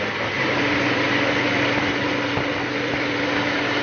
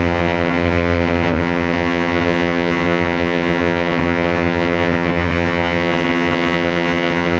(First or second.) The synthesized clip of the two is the second